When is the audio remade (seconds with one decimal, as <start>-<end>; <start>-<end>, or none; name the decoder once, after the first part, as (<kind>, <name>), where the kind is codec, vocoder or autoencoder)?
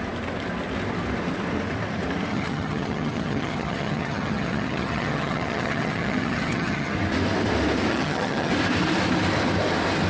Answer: 2.3-6.9 (vocoder, HiFi-GAN); 7.9-8.5